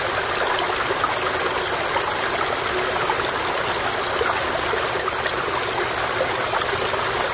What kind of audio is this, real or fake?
real